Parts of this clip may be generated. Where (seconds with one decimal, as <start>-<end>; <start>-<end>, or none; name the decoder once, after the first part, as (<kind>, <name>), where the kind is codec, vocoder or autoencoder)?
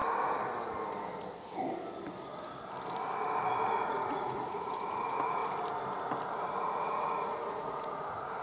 3.7-5.4 (vocoder, Vocos); 6.4-8.4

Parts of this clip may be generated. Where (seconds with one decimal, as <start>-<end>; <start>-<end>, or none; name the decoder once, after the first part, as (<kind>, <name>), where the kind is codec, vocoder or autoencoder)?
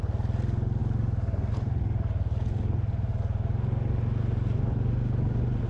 none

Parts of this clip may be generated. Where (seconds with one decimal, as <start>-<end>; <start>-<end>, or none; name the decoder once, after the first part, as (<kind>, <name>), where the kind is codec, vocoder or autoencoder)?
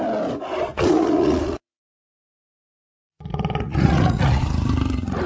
0.7-2.0 (vocoder, Vocos); 2.7-4.4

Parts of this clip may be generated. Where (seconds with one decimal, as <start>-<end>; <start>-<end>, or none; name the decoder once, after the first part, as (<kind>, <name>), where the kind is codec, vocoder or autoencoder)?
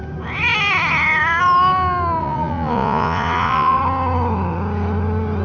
2.2-3.8 (vocoder, Vocos)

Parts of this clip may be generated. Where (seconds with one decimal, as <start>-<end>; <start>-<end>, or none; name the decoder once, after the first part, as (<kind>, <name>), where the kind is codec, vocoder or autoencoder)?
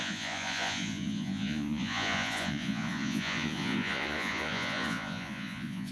0.0-5.9 (vocoder, Vocos)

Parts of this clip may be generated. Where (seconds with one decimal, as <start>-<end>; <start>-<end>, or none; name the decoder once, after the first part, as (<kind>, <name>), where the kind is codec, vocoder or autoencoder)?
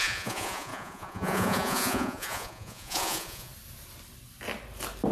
0.0-3.5 (vocoder, Vocos)